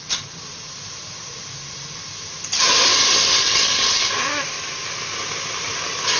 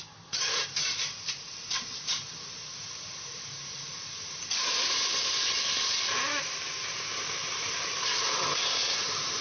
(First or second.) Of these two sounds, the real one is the first